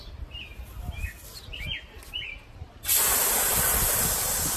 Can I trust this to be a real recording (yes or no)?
yes